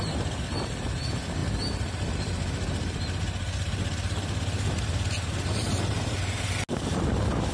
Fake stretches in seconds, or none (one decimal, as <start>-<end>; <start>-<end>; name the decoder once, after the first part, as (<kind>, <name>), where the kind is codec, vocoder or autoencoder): none